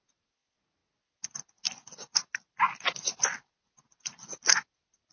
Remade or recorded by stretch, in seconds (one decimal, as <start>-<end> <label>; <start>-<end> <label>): 0.0-5.1 recorded